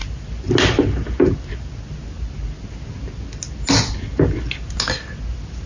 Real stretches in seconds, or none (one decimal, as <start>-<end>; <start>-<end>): 0.0-5.7